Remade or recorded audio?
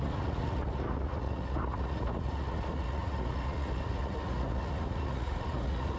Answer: remade